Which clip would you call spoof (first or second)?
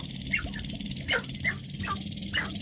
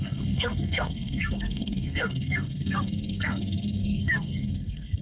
second